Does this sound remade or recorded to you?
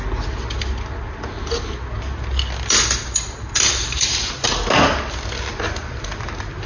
recorded